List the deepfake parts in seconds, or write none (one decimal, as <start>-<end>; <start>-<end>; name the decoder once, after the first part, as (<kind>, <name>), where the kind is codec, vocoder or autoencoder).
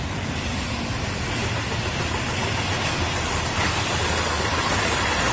none